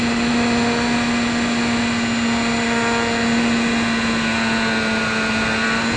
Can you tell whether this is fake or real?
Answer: real